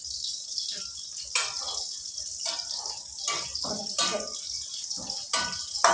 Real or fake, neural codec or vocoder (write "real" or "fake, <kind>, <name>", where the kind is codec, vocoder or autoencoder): real